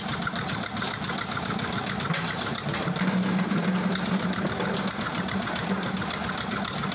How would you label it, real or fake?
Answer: real